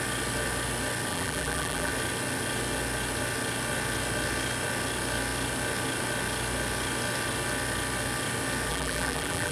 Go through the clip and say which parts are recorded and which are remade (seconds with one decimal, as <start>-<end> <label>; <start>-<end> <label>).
0.0-1.1 recorded; 1.1-1.9 remade; 1.9-8.7 recorded; 8.7-9.5 remade